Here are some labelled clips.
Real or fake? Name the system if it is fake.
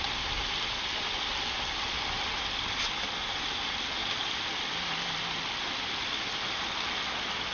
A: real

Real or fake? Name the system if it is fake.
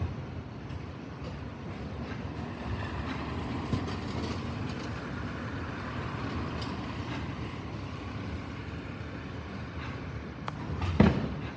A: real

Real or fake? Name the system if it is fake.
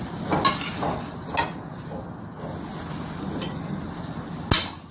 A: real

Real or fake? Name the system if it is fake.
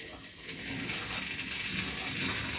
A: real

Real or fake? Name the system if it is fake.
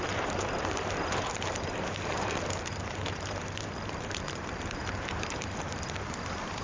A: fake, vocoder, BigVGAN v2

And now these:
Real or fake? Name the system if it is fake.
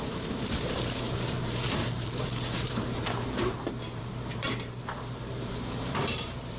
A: fake, vocoder, BigVGAN v2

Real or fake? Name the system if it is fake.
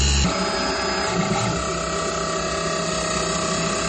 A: real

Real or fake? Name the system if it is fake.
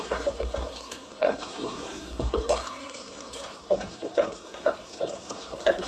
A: fake, codec, SNAC